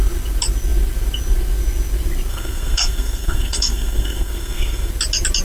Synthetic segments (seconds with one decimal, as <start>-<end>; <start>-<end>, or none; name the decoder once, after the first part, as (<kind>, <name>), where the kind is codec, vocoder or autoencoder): 2.3-4.9 (codec, SNAC)